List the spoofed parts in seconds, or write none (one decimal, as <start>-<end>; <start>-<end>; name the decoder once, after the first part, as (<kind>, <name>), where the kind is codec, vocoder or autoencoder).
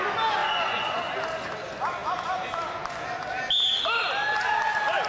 0.4-1.1 (vocoder, Vocos)